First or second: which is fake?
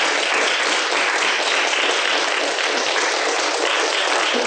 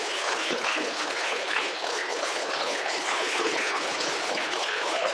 second